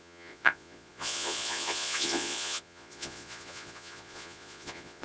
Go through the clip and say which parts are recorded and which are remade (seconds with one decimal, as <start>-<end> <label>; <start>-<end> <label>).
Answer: 0.0-5.0 remade